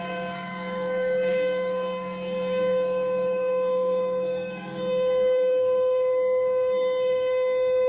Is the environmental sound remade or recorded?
remade